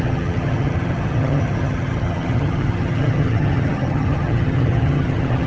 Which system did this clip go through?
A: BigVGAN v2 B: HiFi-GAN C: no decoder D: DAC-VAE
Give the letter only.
B